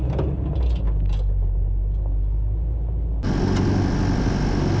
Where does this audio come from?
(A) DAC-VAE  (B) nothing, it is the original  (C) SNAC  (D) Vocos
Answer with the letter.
B